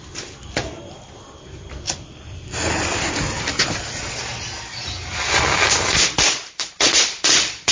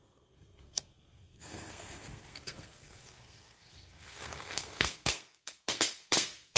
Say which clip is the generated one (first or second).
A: second